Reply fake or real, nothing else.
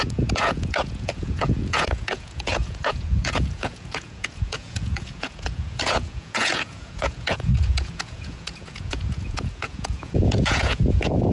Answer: fake